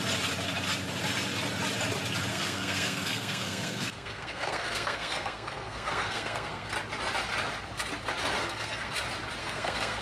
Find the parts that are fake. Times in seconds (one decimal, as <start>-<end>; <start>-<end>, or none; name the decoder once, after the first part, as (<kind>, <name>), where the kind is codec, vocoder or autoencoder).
2.3-6.7 (codec, SNAC); 8.4-8.9; 9.4-10.0